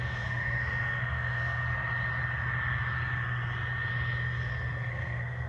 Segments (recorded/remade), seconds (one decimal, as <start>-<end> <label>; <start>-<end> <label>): 0.0-1.6 remade; 1.6-4.9 recorded; 4.9-5.5 remade